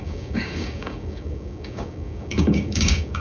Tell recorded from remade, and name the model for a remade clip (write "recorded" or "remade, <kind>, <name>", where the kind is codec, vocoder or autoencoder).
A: remade, codec, DAC